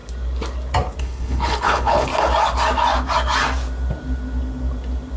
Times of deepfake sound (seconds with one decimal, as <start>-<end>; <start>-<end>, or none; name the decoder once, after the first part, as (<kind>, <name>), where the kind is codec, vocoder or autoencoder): 1.0-2.1 (codec, HILCodec)